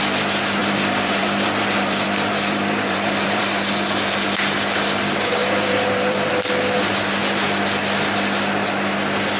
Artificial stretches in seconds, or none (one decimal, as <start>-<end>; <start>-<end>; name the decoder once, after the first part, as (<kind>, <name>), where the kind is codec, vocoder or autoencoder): 0.6-3.4 (vocoder, BigVGAN v2); 5.4-6.3